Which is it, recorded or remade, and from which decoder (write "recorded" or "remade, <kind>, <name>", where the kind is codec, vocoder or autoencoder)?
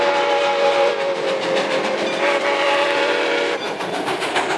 remade, vocoder, BigVGAN v2